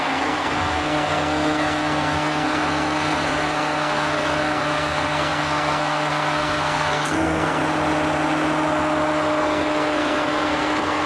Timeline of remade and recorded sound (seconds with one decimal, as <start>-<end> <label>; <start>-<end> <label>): 0.0-7.6 remade; 7.6-9.4 recorded; 9.4-11.1 remade